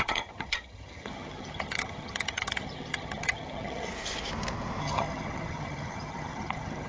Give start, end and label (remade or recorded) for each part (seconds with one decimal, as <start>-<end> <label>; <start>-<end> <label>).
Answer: 0.0-3.9 remade; 3.9-4.8 recorded; 4.8-6.9 remade